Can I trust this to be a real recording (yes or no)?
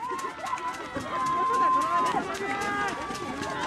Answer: yes